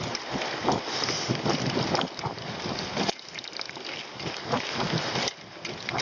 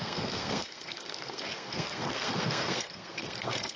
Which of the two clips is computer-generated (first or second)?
second